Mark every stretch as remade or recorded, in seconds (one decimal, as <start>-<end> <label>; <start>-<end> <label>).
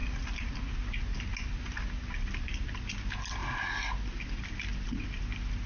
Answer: 0.0-5.7 recorded